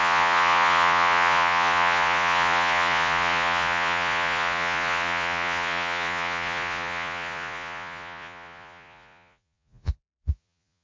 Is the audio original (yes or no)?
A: no